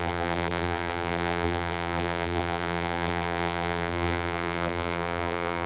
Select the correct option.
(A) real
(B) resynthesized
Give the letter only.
B